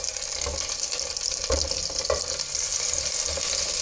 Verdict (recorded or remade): recorded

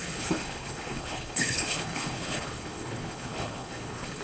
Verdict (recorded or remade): remade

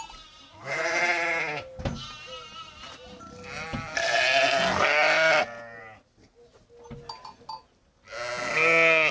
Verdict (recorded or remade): recorded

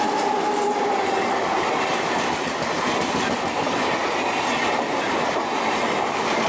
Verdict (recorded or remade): recorded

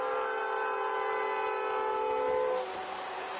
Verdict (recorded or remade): recorded